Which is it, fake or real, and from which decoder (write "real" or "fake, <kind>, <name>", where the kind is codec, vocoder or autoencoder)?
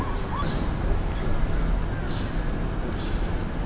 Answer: real